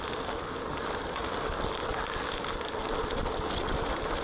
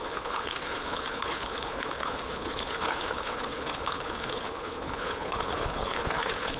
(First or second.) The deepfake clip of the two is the second